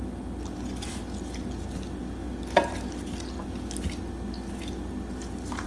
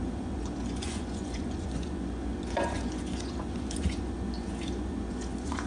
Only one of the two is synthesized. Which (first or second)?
second